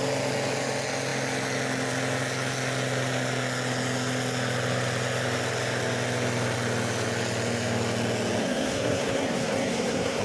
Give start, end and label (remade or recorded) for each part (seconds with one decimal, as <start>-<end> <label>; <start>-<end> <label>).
0.0-8.4 recorded; 8.4-10.2 remade